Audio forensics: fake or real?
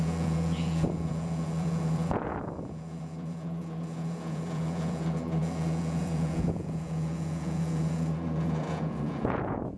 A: fake